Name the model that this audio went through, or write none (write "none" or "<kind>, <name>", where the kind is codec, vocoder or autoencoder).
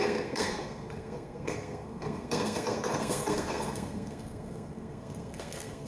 codec, SNAC